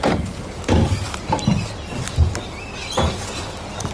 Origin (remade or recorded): recorded